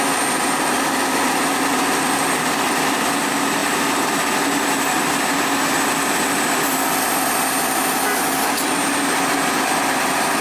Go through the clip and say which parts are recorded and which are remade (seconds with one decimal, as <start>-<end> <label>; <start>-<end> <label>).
0.0-3.6 recorded; 3.6-4.3 remade; 4.3-10.4 recorded